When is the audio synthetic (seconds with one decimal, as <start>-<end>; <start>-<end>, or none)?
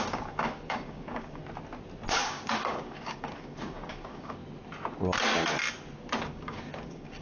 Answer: 0.0-1.4; 2.1-4.4; 6.2-7.2